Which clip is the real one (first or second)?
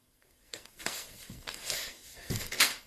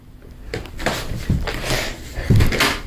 second